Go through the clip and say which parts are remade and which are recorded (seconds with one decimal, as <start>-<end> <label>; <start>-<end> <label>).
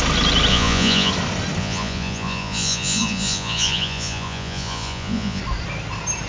0.0-0.5 recorded; 0.5-1.1 remade; 1.1-1.6 recorded; 1.6-5.4 remade; 5.4-6.3 recorded